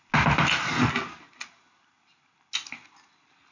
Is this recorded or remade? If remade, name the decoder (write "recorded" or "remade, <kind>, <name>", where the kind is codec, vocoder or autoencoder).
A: recorded